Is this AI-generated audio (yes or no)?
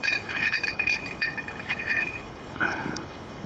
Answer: yes